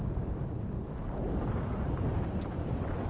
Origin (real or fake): real